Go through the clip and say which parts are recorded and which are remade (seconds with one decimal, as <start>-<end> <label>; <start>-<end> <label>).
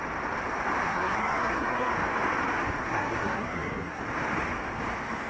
0.0-0.8 recorded; 0.8-1.9 remade; 1.9-2.8 recorded; 2.8-4.0 remade; 4.0-5.3 recorded